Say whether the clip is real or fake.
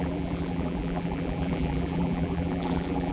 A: fake